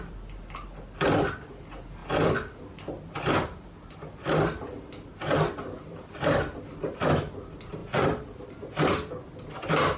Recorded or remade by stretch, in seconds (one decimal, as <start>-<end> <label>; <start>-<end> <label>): 0.0-10.0 recorded